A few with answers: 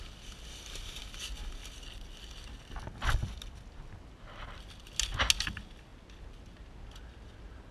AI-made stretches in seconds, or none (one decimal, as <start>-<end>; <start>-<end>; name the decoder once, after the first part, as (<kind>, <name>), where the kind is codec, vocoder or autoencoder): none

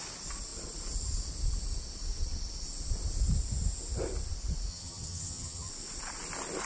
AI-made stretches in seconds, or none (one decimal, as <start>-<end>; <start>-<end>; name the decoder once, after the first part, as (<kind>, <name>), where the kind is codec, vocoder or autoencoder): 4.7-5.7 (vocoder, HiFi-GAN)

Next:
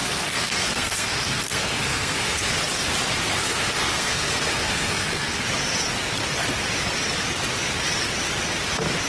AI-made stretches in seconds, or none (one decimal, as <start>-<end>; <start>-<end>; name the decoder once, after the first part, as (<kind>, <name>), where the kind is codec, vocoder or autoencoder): 0.0-2.5 (codec, SNAC); 3.4-5.4

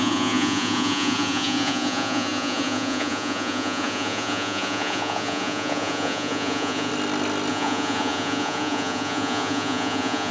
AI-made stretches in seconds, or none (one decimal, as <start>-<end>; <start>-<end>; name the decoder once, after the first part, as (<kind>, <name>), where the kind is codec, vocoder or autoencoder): 0.0-6.9 (vocoder, Vocos); 7.5-10.3

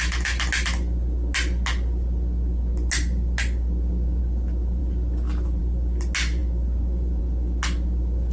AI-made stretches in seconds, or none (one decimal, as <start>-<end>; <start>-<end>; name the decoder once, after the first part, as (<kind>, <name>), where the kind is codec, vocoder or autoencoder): none

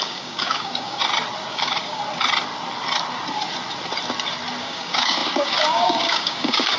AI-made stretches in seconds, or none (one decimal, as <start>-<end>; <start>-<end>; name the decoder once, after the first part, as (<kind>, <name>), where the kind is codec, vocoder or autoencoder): 0.0-1.0 (codec, DAC); 1.5-2.0; 4.6-6.8